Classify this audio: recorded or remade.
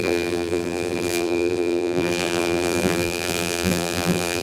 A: remade